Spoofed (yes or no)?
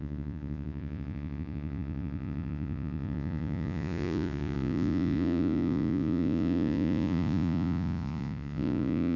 yes